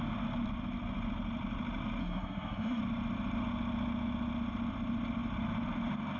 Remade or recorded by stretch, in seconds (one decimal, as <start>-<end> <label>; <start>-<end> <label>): 0.0-2.0 recorded; 2.0-2.8 remade; 2.8-6.2 recorded